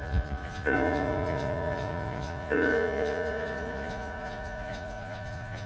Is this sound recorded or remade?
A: remade